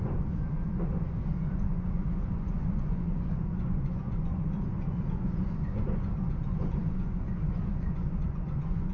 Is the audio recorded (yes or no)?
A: no